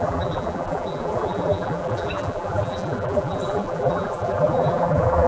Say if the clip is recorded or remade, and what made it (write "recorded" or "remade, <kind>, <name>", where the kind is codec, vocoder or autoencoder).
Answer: remade, vocoder, BigVGAN v2